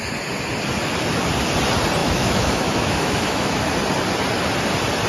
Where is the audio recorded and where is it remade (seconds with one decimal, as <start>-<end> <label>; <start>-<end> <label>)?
0.0-2.0 recorded; 2.0-3.7 remade; 3.7-5.1 recorded

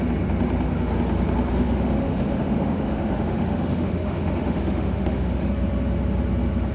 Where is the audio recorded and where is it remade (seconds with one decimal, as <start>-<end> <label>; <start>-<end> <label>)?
0.0-1.5 recorded; 1.5-5.5 remade; 5.5-6.7 recorded

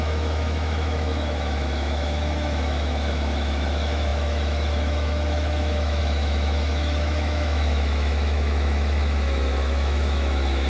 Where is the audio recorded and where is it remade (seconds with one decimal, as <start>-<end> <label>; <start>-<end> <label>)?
0.0-10.7 remade

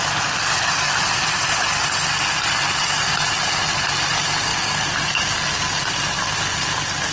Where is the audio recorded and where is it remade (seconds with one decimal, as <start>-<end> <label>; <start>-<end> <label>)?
0.0-7.1 recorded

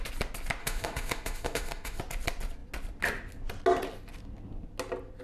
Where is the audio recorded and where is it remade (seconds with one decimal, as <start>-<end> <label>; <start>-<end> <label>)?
0.0-0.6 recorded; 0.6-2.0 remade; 2.0-5.2 recorded

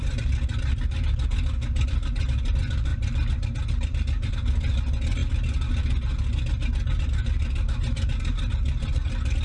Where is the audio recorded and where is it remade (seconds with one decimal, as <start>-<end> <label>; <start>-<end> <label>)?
0.0-9.4 recorded

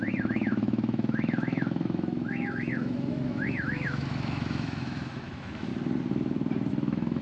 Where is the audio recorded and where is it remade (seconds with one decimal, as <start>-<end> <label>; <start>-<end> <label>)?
0.0-5.7 remade; 5.7-6.7 recorded; 6.7-7.2 remade